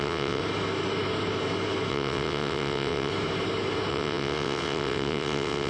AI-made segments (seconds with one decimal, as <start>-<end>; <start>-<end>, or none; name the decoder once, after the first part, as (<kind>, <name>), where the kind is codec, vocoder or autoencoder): 0.0-0.4 (vocoder, WaveNeXt); 1.9-3.1; 3.9-5.7